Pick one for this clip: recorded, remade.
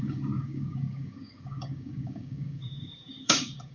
remade